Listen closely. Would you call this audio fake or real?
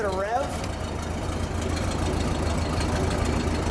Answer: real